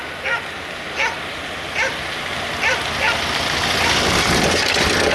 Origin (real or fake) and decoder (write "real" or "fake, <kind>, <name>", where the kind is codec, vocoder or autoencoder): real